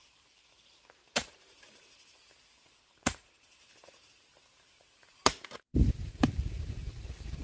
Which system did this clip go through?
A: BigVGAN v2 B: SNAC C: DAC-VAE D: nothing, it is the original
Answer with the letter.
A